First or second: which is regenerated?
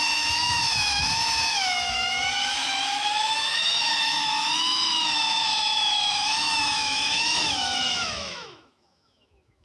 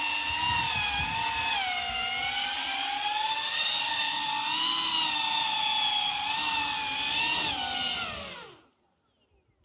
first